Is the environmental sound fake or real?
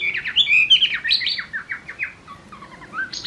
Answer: real